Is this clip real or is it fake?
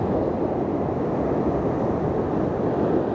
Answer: real